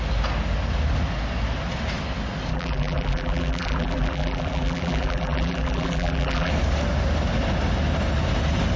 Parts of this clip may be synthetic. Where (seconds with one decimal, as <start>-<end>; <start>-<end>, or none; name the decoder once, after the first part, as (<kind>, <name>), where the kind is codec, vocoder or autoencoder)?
2.5-6.5 (vocoder, BigVGAN v2)

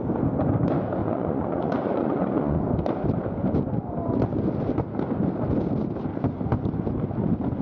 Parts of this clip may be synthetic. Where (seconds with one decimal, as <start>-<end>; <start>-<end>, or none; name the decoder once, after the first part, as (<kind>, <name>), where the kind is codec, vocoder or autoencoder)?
1.0-2.6 (vocoder, Vocos)